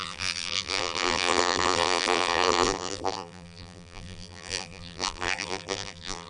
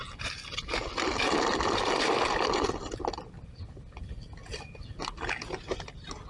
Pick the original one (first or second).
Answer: second